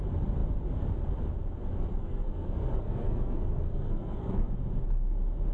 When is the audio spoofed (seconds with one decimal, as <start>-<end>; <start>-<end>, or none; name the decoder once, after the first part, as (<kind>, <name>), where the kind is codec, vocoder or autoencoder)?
1.9-4.5 (codec, SNAC)